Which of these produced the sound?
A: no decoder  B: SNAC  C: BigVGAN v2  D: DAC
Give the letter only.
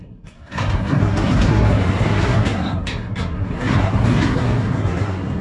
B